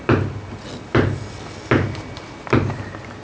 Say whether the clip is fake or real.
real